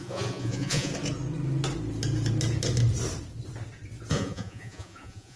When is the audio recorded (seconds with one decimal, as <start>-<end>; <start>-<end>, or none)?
0.9-4.1

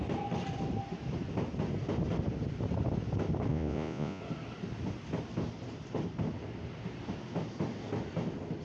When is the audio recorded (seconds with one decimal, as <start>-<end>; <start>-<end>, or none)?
0.0-3.5; 4.2-8.6